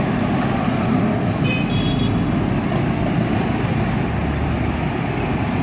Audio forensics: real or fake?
real